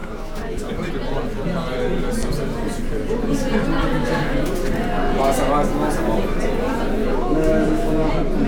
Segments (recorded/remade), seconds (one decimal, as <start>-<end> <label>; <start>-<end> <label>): 0.0-0.9 remade; 0.9-4.0 recorded; 4.0-4.5 remade; 4.5-7.0 recorded; 7.0-8.1 remade; 8.1-8.5 recorded